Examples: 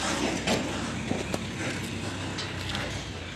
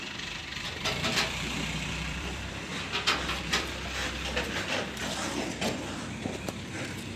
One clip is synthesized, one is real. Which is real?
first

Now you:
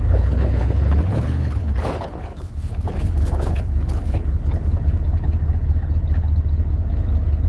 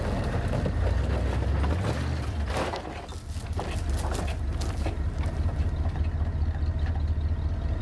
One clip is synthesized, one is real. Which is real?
second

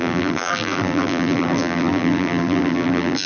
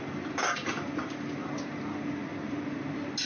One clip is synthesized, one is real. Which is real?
second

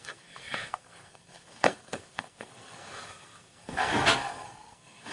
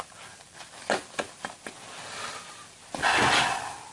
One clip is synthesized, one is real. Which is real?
second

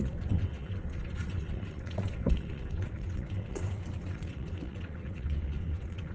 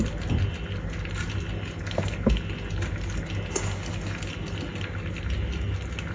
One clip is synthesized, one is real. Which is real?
second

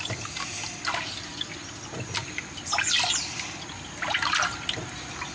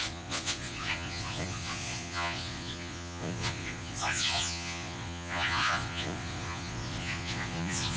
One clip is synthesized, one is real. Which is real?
first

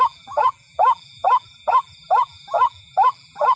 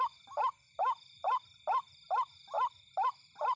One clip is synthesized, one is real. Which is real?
second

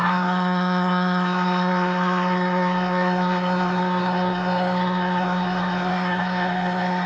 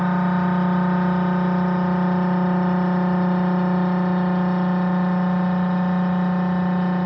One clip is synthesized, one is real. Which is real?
second